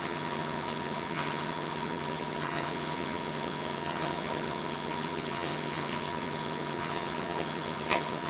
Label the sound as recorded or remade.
remade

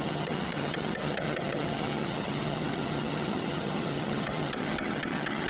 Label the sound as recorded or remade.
remade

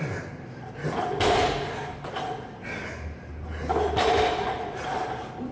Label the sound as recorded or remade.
recorded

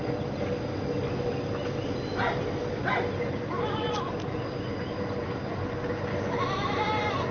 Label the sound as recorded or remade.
recorded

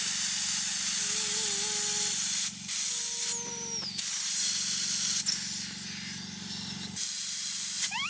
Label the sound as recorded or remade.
recorded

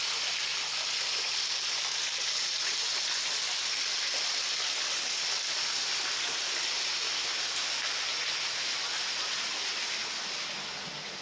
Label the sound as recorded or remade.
recorded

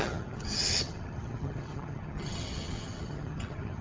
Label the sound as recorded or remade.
remade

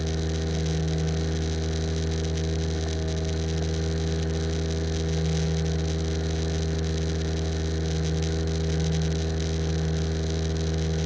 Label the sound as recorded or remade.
recorded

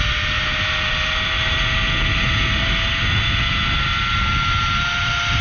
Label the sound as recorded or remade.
recorded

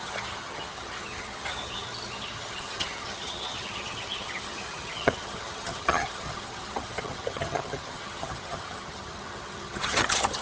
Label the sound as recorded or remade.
remade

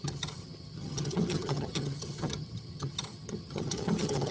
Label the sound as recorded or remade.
remade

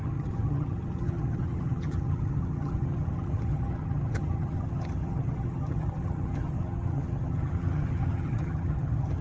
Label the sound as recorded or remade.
remade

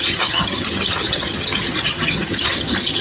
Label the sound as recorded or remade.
remade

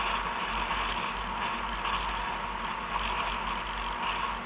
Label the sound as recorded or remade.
recorded